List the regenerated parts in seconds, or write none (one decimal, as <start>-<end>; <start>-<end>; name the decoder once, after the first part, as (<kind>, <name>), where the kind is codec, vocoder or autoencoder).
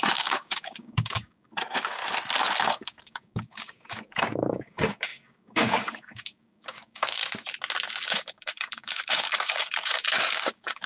0.0-2.0 (codec, DAC); 2.6-7.2; 8.1-10.9